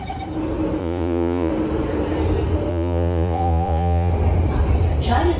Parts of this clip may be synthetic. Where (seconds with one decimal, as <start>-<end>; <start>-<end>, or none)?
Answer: 0.8-1.5; 2.7-4.1